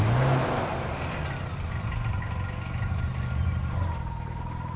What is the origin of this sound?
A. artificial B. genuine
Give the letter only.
B